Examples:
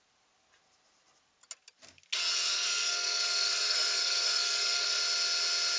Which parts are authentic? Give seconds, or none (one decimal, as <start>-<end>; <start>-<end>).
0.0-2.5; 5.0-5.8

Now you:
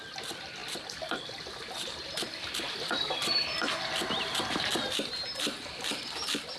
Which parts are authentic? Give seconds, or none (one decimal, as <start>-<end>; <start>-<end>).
0.0-6.6

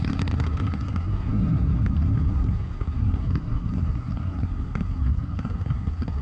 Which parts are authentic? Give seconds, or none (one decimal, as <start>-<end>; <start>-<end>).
none

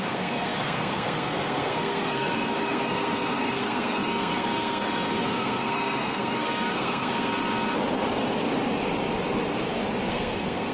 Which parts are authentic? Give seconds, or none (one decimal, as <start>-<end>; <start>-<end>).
7.3-10.1

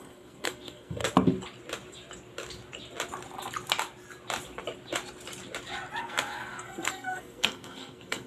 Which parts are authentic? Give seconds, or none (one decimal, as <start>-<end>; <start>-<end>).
1.0-6.0

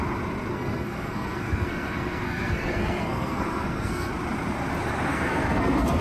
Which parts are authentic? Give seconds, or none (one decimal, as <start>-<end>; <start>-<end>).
0.0-0.5; 4.1-5.1